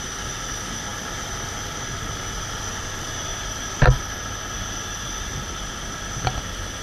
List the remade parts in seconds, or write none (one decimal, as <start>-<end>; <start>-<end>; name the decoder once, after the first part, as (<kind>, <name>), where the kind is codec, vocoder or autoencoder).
0.9-1.6 (vocoder, BigVGAN v2); 3.3-4.1